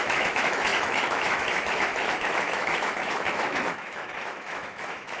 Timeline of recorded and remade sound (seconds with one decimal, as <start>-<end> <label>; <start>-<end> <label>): 0.0-5.2 remade